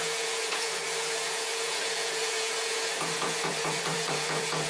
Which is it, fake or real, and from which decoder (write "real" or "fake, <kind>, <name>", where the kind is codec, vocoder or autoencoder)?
fake, vocoder, Vocos